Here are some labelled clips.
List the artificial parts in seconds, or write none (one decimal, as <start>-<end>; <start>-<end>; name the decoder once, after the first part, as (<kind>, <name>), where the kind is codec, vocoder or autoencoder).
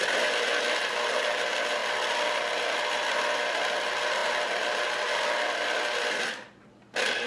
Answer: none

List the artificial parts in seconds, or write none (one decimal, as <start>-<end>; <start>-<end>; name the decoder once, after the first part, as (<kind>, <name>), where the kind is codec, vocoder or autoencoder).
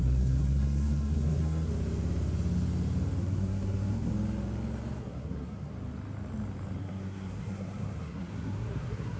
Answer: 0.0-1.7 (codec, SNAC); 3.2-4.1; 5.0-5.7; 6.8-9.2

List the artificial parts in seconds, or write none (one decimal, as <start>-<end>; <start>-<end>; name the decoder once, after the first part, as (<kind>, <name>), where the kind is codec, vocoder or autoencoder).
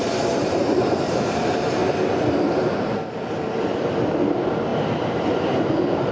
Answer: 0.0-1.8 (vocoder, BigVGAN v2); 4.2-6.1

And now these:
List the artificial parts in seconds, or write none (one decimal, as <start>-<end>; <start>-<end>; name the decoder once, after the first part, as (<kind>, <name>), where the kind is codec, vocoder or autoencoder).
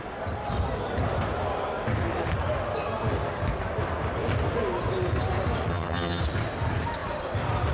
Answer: 5.7-6.2 (vocoder, HiFi-GAN)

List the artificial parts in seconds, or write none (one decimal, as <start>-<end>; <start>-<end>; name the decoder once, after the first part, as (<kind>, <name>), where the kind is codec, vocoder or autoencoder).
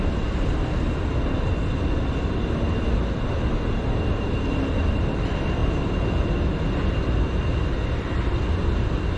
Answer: none